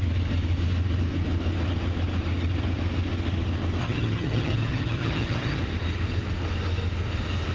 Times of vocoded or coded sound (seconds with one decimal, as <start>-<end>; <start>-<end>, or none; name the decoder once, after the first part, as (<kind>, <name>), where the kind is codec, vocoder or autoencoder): 3.8-5.6 (vocoder, HiFi-GAN)